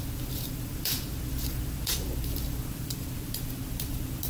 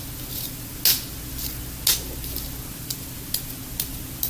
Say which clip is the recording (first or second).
second